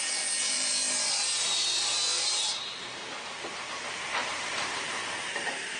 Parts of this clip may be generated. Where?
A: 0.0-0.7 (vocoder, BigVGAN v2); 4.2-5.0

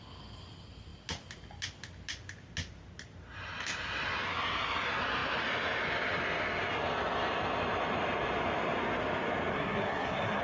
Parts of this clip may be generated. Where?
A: 9.5-10.4 (codec, SNAC)